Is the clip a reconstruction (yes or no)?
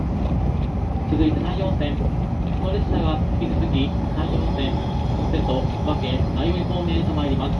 no